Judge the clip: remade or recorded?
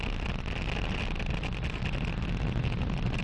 recorded